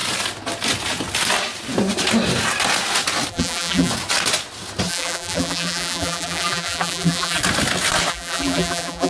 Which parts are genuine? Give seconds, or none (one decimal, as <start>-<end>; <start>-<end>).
0.0-3.3; 3.9-4.9; 7.4-8.1